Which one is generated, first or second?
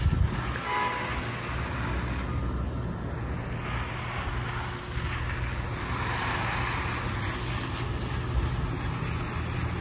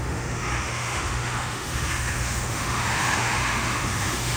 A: second